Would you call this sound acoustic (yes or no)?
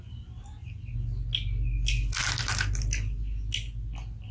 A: yes